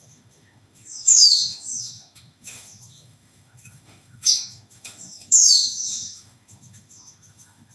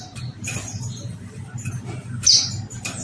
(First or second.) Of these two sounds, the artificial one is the first